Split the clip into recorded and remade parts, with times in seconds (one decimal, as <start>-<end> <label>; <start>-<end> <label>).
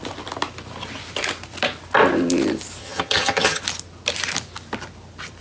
0.0-2.8 recorded; 2.8-3.6 remade; 3.6-5.4 recorded